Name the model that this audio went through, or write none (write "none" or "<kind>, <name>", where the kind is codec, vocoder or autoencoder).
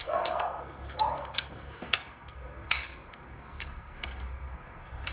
codec, SNAC